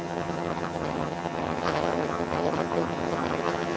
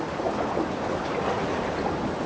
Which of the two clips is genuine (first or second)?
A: second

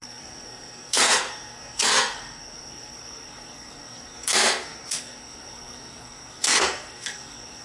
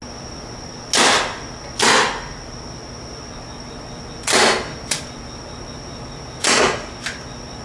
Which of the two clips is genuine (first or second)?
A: second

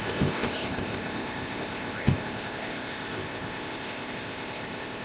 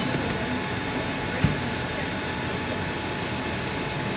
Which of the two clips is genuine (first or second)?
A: second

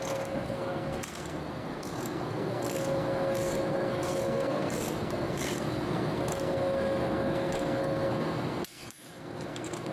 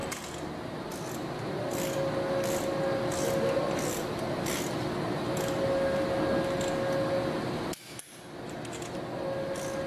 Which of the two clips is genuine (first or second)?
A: second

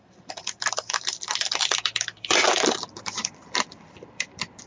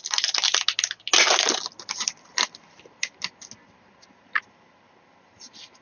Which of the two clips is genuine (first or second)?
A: second